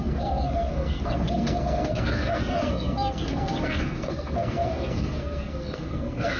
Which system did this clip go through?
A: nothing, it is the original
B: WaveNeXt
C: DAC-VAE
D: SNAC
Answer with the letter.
D